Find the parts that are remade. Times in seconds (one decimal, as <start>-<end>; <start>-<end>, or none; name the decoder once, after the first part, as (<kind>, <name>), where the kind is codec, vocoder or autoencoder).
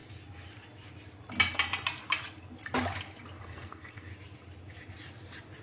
3.4-4.1 (codec, SNAC)